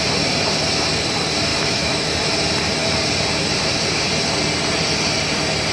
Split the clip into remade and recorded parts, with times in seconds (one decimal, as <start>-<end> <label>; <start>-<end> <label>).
0.0-1.5 recorded; 1.5-2.1 remade; 2.1-5.7 recorded